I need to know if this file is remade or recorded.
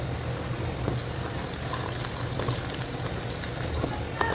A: recorded